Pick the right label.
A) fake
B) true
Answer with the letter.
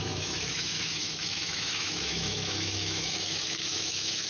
A